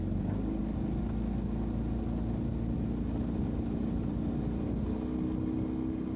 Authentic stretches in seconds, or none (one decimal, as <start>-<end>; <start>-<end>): 0.0-6.2